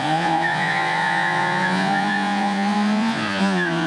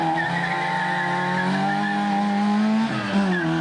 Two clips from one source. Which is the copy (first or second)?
first